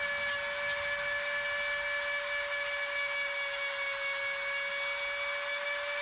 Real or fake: real